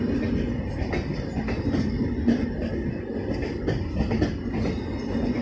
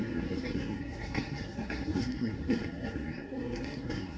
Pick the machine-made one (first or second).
second